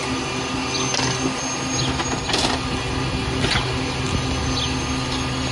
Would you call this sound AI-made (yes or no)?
no